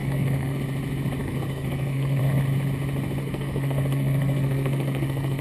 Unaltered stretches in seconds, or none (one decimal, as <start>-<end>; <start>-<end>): 0.6-1.2; 2.2-3.2